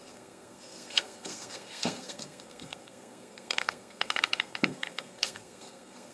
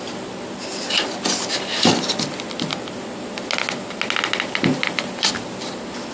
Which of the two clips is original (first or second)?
second